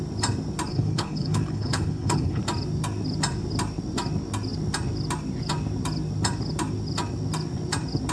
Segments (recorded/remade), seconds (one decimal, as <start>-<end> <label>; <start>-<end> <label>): 0.0-0.7 recorded; 0.7-2.4 remade; 2.4-8.1 recorded